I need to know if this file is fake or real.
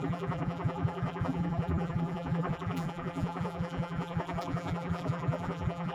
fake